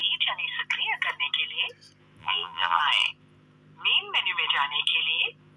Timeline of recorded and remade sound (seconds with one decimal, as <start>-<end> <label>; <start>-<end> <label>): 0.0-2.2 recorded; 2.2-2.8 remade; 2.8-5.6 recorded